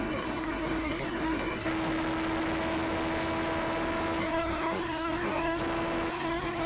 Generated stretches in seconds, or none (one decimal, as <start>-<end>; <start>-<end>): 0.0-1.7; 4.2-5.6; 6.1-6.7